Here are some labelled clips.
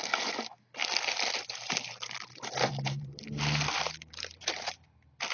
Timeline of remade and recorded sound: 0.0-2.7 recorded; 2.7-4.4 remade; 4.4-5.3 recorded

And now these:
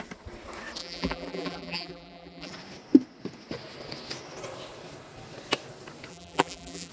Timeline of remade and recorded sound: 0.0-0.8 recorded; 0.8-2.5 remade; 2.5-6.1 recorded; 6.1-6.9 remade

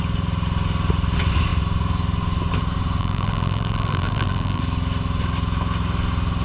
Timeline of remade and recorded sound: 0.0-3.0 recorded; 3.0-4.6 remade; 4.6-6.4 recorded

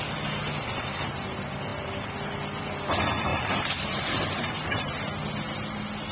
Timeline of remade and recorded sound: 0.0-3.3 recorded; 3.3-4.8 remade; 4.8-6.1 recorded

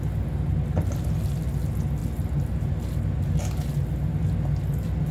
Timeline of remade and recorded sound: 0.0-5.1 recorded

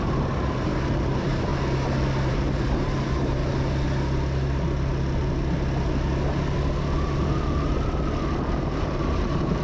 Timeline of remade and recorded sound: 0.0-1.5 remade; 1.5-2.3 recorded; 2.3-3.4 remade; 3.4-8.4 recorded; 8.4-9.6 remade